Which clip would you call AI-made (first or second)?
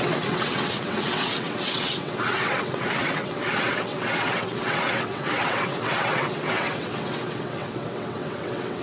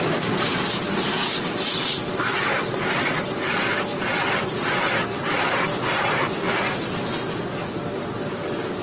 first